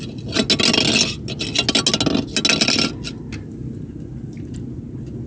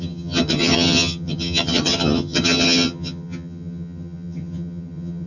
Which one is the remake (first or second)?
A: second